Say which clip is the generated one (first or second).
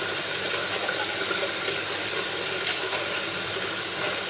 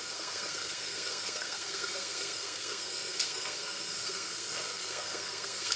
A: second